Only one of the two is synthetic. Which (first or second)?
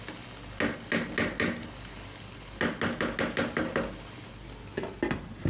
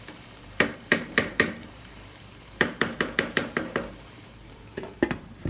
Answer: second